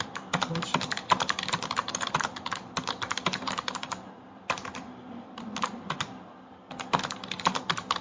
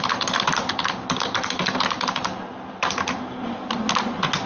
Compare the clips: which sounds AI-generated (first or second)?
first